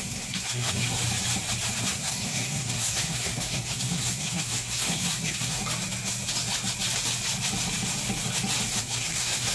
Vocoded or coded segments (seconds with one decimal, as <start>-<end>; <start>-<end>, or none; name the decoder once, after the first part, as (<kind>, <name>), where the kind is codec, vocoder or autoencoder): 0.0-1.0 (codec, SNAC); 1.8-5.6; 8.8-9.5